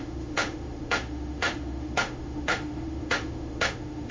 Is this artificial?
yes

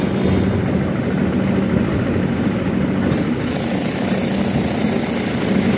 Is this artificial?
no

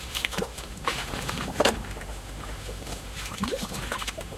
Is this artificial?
yes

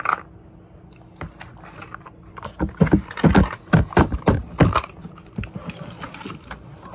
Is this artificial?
no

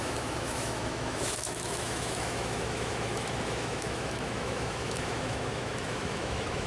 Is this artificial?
yes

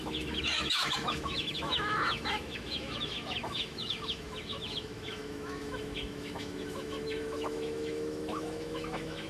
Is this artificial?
yes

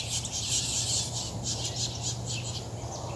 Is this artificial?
no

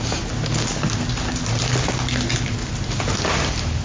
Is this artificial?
no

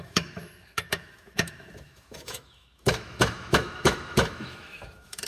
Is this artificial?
yes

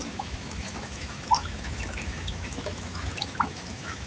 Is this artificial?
yes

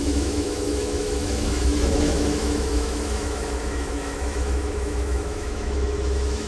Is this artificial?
yes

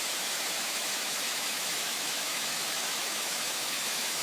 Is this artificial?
yes